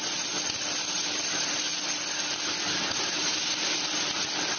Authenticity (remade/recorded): recorded